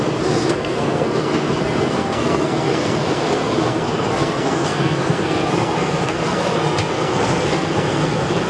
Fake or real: fake